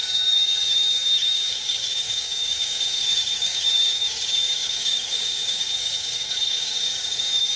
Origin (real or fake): fake